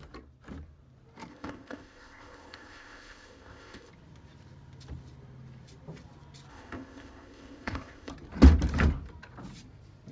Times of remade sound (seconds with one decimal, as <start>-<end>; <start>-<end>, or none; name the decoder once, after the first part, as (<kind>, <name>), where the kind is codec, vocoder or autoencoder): 1.3-3.9 (codec, ZipCodec); 6.5-8.1